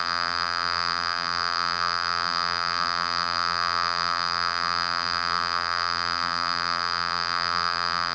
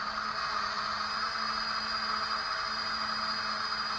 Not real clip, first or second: first